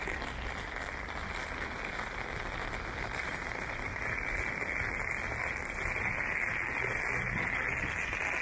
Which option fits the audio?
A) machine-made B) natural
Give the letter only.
B